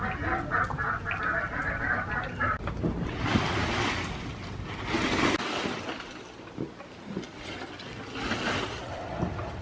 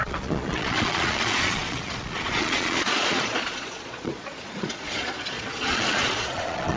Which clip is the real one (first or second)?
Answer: first